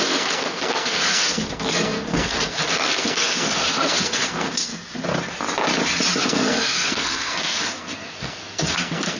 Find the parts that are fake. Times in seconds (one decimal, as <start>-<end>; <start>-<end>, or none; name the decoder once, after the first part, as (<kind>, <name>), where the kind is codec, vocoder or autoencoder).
0.0-4.7 (codec, SNAC); 6.1-9.2